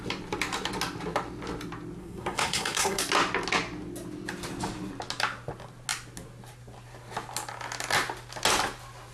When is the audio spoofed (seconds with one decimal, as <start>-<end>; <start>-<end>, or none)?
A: 2.0-3.0